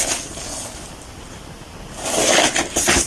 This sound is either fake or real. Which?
real